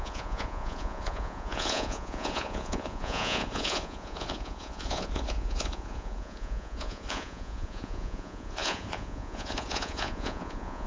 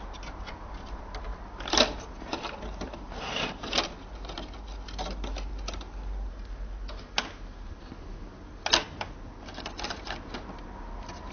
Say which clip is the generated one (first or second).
first